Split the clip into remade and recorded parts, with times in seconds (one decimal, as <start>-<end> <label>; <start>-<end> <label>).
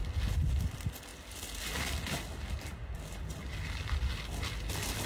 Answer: 0.0-5.1 recorded